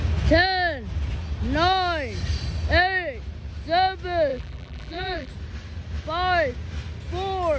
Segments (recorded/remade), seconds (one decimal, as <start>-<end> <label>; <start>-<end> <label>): 0.0-4.3 recorded; 4.3-5.3 remade; 5.3-7.6 recorded